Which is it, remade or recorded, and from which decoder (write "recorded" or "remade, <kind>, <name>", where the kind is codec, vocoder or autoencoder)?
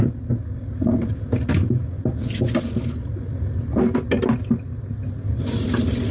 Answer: recorded